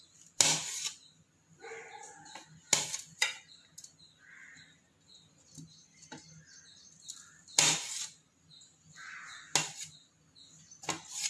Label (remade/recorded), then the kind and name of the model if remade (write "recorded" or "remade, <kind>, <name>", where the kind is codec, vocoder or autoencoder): recorded